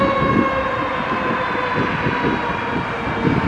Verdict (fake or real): real